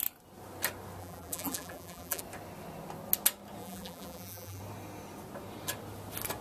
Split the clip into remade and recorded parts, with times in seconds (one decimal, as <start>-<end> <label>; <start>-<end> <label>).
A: 0.0-1.0 recorded; 1.0-2.2 remade; 2.2-3.6 recorded; 3.6-4.6 remade; 4.6-6.4 recorded

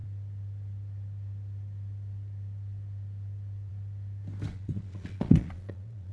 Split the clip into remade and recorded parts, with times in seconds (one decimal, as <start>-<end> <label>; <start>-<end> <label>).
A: 0.0-4.5 recorded; 4.5-6.1 remade

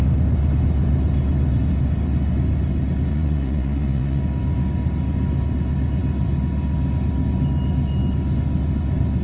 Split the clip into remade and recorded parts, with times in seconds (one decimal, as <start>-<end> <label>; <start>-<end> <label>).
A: 0.0-3.1 recorded; 3.1-4.2 remade; 4.2-9.2 recorded

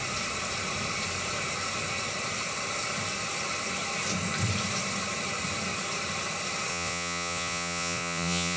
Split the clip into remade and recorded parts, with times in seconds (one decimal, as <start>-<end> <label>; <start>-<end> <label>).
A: 0.0-6.7 recorded; 6.7-8.6 remade

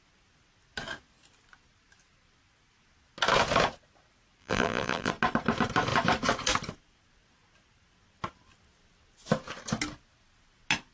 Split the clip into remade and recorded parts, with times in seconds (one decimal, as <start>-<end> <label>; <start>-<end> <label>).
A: 0.0-4.4 recorded; 4.4-5.1 remade; 5.1-10.9 recorded

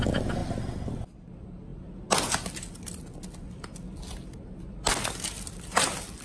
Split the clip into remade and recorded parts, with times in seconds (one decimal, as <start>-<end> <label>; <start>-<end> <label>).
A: 0.0-6.2 recorded

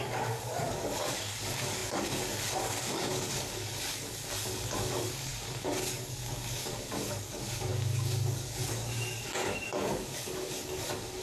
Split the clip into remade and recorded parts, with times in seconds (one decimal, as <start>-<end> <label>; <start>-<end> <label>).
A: 0.0-11.2 remade